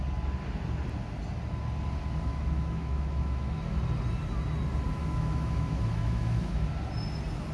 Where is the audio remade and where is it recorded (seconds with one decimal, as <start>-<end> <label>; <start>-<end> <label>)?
0.0-2.3 recorded; 2.3-3.6 remade; 3.6-5.0 recorded; 5.0-6.7 remade; 6.7-7.5 recorded

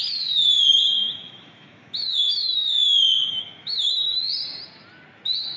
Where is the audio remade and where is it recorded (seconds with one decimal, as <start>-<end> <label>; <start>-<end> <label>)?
0.0-0.9 recorded; 0.9-4.3 remade; 4.3-5.6 recorded

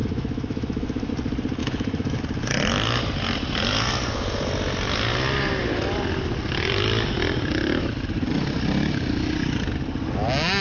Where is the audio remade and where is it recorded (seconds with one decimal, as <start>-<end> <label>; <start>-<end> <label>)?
0.0-1.1 remade; 1.1-1.6 recorded; 1.6-2.2 remade; 2.2-10.6 recorded

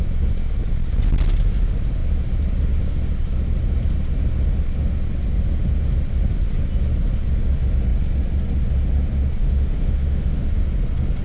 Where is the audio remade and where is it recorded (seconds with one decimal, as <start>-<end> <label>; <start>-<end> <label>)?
0.0-9.4 recorded; 9.4-10.6 remade; 10.6-11.2 recorded

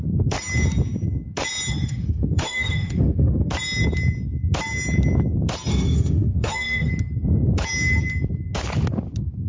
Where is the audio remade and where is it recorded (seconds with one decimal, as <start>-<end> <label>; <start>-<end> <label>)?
0.0-1.7 recorded; 1.7-3.5 remade; 3.5-5.7 recorded; 5.7-6.9 remade; 6.9-9.5 recorded

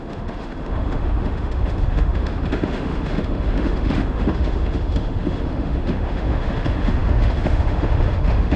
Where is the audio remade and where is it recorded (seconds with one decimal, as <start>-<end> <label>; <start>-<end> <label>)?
0.0-8.6 remade

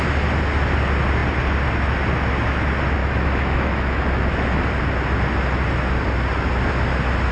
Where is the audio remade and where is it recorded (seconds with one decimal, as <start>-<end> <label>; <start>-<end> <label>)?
0.0-3.0 recorded; 3.0-4.6 remade; 4.6-7.3 recorded

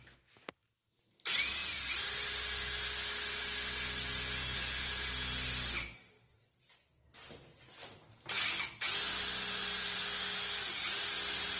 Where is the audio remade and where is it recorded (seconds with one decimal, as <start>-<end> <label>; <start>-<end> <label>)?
0.0-11.6 recorded